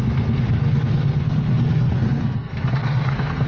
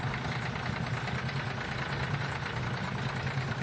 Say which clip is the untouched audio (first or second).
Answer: second